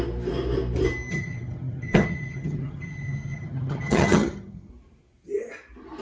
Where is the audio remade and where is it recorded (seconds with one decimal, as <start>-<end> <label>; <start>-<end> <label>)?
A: 0.0-1.1 recorded; 1.1-4.7 remade; 4.7-6.0 recorded

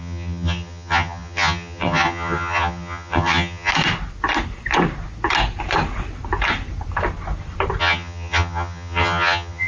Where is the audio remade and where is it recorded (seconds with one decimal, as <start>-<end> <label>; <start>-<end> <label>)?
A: 0.0-3.7 remade; 3.7-7.8 recorded; 7.8-9.7 remade

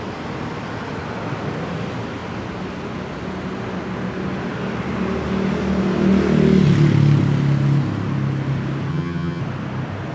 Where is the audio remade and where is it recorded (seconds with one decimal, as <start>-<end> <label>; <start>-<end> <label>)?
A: 0.0-8.9 recorded; 8.9-9.4 remade; 9.4-10.1 recorded

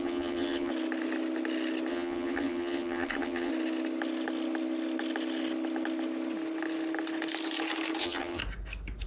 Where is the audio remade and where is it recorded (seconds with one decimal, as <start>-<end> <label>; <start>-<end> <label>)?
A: 0.0-0.7 remade; 0.7-1.9 recorded; 1.9-3.5 remade; 3.5-8.0 recorded; 8.0-8.4 remade; 8.4-9.1 recorded

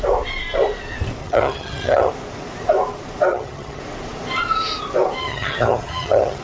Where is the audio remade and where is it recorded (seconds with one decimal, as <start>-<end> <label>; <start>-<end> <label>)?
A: 0.0-1.2 recorded; 1.2-2.1 remade; 2.1-3.3 recorded; 3.3-3.8 remade; 3.8-5.2 recorded; 5.2-6.4 remade